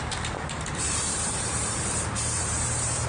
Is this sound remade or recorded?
remade